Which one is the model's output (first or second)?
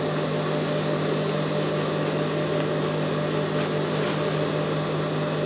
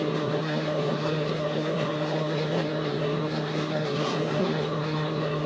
second